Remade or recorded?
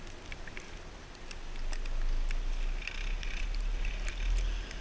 recorded